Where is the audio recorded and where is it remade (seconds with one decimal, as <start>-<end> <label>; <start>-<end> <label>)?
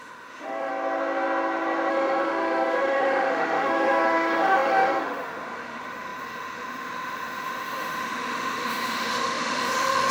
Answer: 0.0-0.7 remade; 0.7-1.9 recorded; 1.9-10.1 remade